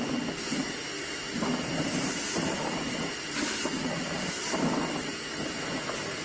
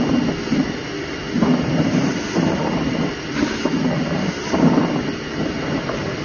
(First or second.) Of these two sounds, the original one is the first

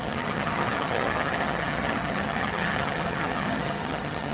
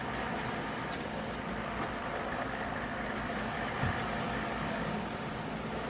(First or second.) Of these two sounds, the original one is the second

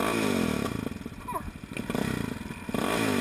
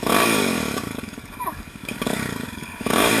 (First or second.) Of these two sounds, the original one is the first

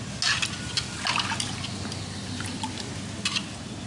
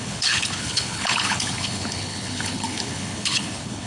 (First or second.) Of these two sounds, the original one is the first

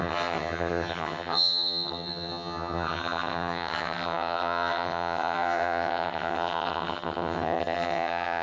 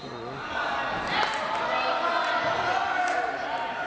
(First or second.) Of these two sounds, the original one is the second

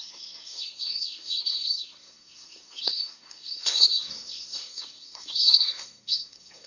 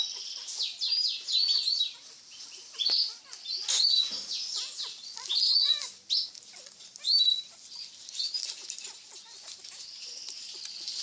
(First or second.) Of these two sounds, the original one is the second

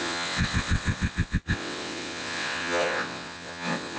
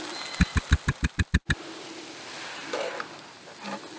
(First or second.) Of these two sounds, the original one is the second